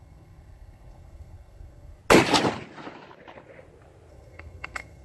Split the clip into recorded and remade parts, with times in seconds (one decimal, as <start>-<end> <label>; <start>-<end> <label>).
0.0-2.0 remade; 2.0-4.1 recorded; 4.1-5.0 remade